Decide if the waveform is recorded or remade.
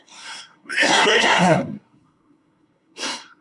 remade